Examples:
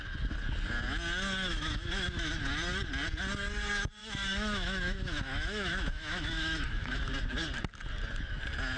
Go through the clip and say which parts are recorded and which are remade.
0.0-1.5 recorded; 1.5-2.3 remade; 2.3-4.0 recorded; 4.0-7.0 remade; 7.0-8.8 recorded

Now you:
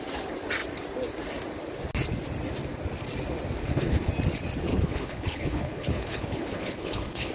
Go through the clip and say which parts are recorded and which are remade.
0.0-3.6 recorded; 3.6-4.1 remade; 4.1-4.7 recorded; 4.7-7.3 remade

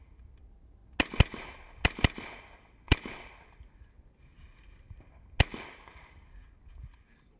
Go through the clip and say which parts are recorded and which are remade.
0.0-7.4 recorded